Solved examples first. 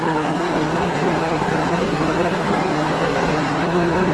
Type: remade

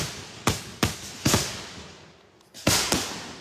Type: recorded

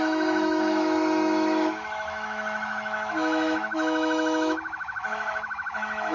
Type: remade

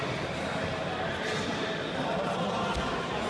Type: recorded